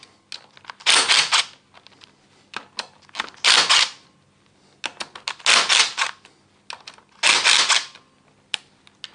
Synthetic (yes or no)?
no